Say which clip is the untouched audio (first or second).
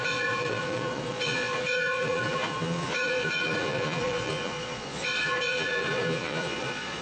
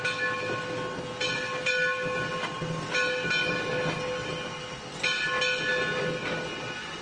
second